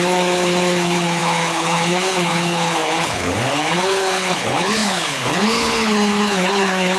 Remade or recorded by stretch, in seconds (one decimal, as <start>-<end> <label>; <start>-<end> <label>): 0.0-7.0 remade